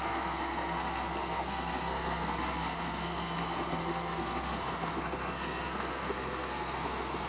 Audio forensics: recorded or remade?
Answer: remade